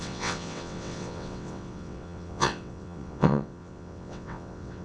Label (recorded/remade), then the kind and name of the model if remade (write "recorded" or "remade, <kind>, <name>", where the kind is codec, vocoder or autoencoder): remade, vocoder, WaveNeXt